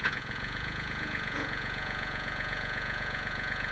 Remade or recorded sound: remade